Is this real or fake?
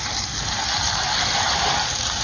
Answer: real